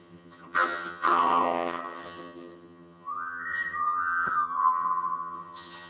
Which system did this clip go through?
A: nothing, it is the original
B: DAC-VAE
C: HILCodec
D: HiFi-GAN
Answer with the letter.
D